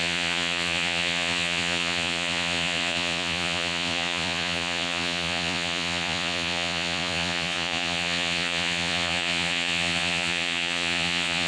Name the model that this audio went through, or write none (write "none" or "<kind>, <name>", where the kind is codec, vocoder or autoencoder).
vocoder, Vocos